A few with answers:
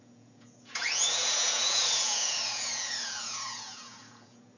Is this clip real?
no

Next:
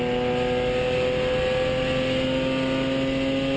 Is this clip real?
yes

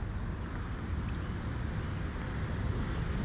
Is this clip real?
yes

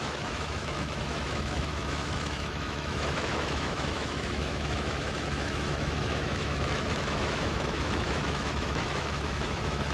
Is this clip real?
no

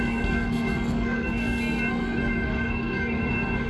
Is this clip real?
no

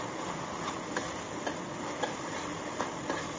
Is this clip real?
yes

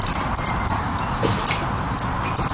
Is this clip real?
yes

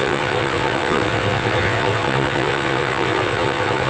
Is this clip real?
no